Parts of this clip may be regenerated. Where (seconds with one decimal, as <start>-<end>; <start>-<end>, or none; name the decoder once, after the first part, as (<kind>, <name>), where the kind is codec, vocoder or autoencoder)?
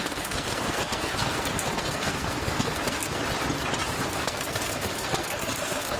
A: 0.0-3.2 (codec, SNAC); 4.0-6.0